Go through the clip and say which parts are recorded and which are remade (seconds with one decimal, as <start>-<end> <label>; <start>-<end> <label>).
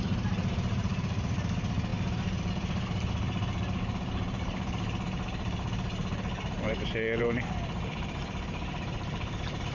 0.0-9.7 remade